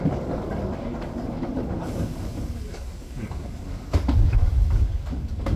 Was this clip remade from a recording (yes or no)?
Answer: yes